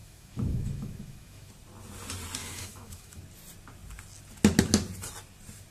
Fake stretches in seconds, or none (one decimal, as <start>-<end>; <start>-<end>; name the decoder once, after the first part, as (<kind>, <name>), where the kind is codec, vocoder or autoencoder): 0.0-1.5 (autoencoder, DAC-VAE); 2.4-3.2